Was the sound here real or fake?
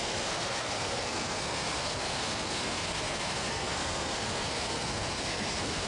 fake